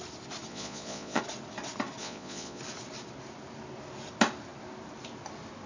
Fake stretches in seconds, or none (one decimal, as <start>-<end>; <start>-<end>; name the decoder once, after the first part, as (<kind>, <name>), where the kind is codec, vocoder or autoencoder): 0.5-1.2 (vocoder, Vocos); 2.0-2.6